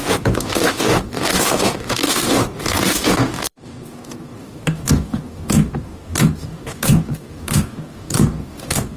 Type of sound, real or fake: fake